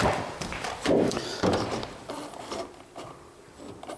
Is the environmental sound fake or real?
fake